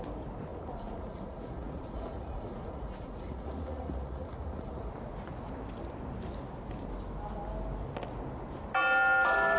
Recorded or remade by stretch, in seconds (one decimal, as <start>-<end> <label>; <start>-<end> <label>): 0.0-0.5 recorded; 0.5-4.9 remade; 4.9-9.6 recorded